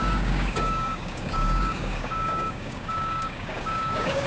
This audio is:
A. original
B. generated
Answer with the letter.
B